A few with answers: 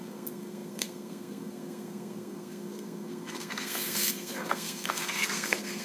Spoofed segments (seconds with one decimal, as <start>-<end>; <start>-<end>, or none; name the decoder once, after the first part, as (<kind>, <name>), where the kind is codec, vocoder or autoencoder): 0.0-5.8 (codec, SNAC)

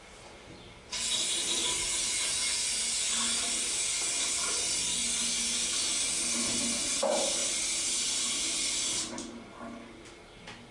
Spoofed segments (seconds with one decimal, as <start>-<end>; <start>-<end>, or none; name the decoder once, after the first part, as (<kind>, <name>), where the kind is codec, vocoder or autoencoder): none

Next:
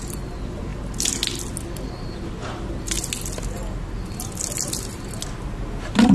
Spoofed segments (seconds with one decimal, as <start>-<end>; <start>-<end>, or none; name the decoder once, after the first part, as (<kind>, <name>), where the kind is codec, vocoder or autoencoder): none

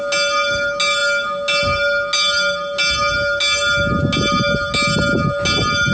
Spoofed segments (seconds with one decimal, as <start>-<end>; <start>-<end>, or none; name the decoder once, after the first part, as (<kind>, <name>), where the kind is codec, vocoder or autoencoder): none

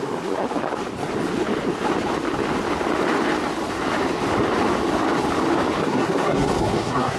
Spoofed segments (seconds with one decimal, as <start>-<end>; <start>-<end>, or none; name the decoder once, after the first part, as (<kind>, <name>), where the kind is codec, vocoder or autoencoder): 5.8-7.2 (codec, SNAC)